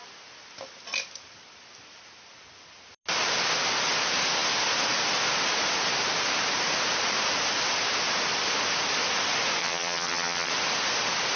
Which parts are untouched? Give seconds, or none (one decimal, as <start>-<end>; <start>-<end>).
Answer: 0.0-9.6; 10.5-11.4